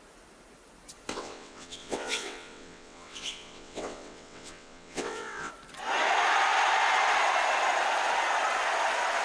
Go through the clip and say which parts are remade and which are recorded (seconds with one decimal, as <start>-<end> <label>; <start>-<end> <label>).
0.0-1.1 recorded; 1.1-5.5 remade; 5.5-9.2 recorded

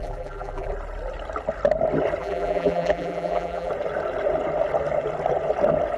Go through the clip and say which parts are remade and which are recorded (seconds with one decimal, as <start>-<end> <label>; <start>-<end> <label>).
0.0-0.7 remade; 0.7-2.2 recorded; 2.2-3.7 remade; 3.7-6.0 recorded